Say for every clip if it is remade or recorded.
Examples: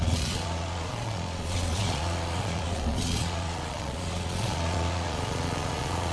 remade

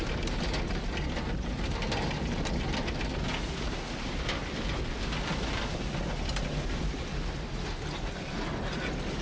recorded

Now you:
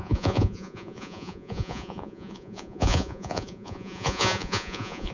remade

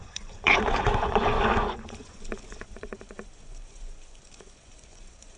remade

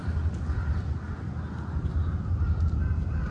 recorded